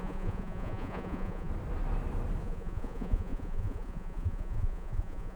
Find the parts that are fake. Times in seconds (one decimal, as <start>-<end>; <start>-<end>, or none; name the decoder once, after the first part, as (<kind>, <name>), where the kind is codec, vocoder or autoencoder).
0.0-1.5 (vocoder, Vocos); 2.4-5.4